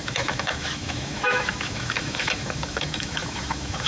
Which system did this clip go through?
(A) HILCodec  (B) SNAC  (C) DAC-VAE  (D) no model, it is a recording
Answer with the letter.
C